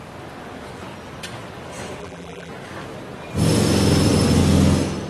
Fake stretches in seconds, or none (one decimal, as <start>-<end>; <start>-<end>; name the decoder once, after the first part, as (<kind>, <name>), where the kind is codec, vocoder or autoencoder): 2.0-2.5 (vocoder, BigVGAN v2)